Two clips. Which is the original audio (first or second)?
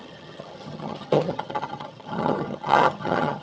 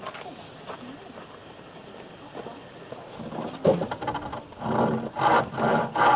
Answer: second